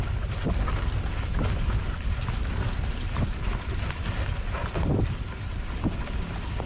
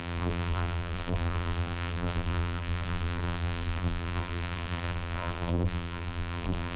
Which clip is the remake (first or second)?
second